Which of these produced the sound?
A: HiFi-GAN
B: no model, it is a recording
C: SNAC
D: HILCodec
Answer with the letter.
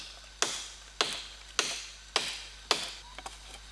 B